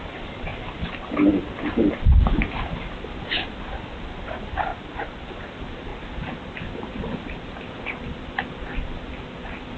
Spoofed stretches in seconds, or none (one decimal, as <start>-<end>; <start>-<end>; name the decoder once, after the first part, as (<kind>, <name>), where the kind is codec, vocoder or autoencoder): none